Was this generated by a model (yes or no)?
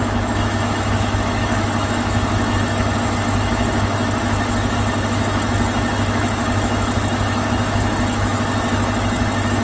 yes